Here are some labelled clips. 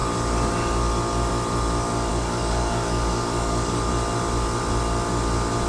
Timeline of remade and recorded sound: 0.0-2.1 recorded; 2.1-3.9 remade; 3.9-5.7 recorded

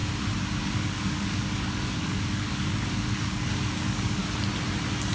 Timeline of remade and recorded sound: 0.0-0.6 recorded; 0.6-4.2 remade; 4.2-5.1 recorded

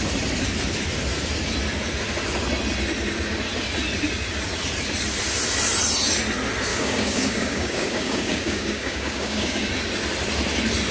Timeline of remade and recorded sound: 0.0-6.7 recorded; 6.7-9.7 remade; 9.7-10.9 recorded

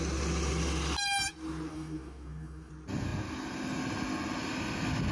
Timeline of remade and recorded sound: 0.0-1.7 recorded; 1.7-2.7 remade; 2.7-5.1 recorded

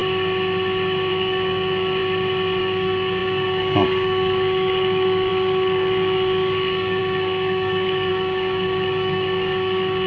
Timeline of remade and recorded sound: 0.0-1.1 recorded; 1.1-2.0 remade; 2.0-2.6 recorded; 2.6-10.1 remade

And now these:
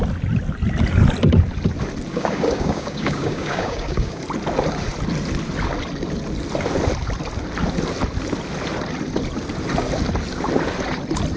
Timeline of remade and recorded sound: 0.0-2.1 recorded; 2.1-4.2 remade; 4.2-11.4 recorded

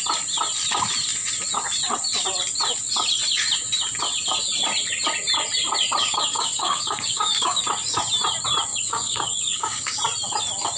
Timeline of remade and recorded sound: 0.0-6.0 recorded; 6.0-7.6 remade; 7.6-8.7 recorded; 8.7-10.0 remade; 10.0-10.8 recorded

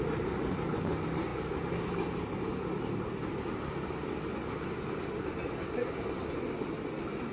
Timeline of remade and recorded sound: 0.0-5.8 recorded; 5.8-6.3 remade; 6.3-7.3 recorded